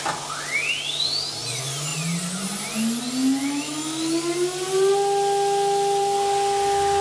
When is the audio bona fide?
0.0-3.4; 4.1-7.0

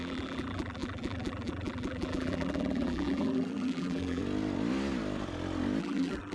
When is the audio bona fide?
4.2-5.8